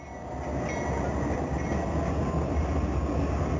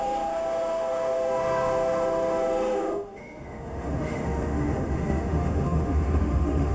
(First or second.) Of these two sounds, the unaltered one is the first